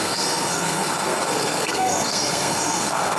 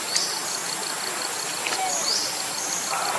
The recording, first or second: second